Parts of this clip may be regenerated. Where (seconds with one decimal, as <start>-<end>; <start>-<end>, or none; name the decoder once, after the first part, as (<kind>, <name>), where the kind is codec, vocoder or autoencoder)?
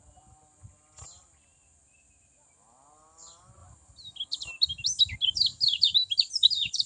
none